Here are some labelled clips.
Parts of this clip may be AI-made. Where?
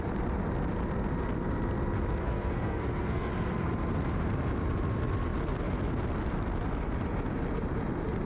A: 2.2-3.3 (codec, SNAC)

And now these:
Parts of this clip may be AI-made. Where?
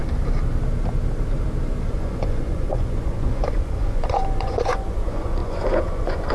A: 1.9-6.3 (vocoder, Vocos)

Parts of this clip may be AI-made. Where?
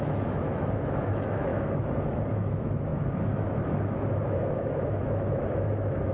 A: 0.0-6.1 (autoencoder, DAC-VAE)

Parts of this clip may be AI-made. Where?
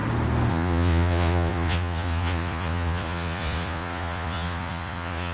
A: 0.5-5.3 (vocoder, Vocos)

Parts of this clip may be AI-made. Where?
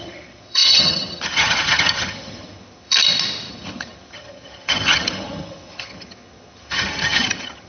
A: 0.0-2.9 (vocoder, HiFi-GAN); 3.5-7.7